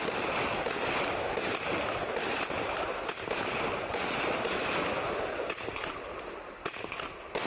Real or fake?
real